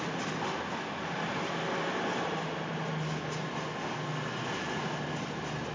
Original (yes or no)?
yes